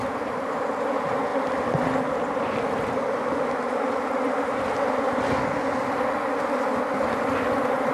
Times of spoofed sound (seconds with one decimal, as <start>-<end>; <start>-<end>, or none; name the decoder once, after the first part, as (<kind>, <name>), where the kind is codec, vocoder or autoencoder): none